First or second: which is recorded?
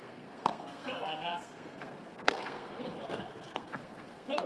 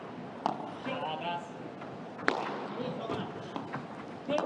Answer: second